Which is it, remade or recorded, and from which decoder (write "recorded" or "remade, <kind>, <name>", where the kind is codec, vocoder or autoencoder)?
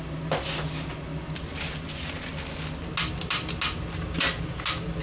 recorded